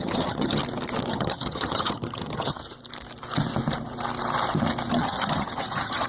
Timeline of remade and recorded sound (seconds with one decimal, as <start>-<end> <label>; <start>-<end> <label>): 0.0-0.6 remade; 0.6-1.1 recorded; 1.1-2.6 remade; 2.6-4.9 recorded; 4.9-6.1 remade